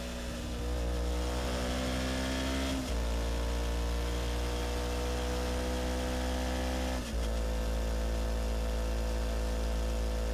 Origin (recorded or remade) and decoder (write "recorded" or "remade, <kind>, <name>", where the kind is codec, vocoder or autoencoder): recorded